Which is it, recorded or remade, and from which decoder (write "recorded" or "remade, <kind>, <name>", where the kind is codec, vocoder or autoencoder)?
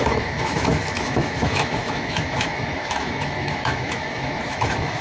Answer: remade, autoencoder, DAC-VAE